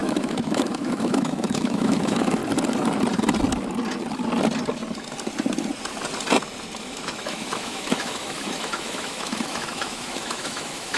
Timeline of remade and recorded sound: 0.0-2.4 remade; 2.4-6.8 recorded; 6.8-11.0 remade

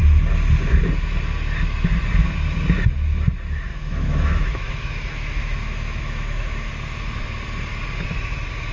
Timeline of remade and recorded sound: 0.0-3.7 recorded; 3.7-6.7 remade; 6.7-8.7 recorded

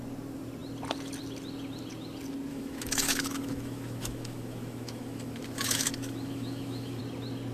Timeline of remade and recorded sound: 0.0-2.5 recorded; 2.5-7.0 remade; 7.0-7.5 recorded

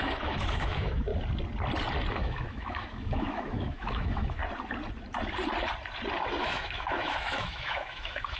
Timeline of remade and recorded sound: 0.0-1.1 remade; 1.1-2.1 recorded; 2.1-4.4 remade; 4.4-6.4 recorded; 6.4-8.4 remade

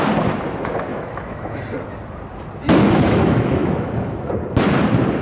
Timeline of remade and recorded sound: 0.0-0.9 recorded; 0.9-1.6 remade; 1.6-2.8 recorded; 2.8-4.3 remade; 4.3-5.2 recorded